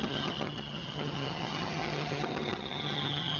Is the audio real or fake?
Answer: fake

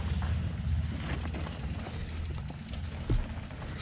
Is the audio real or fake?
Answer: real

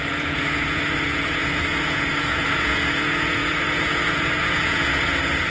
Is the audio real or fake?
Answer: fake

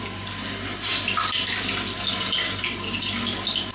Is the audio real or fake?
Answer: real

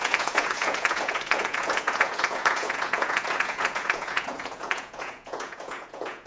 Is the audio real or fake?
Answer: fake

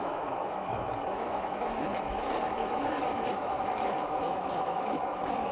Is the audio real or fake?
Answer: fake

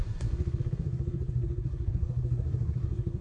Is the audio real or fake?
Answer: fake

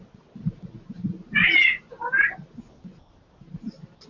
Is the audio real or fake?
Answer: real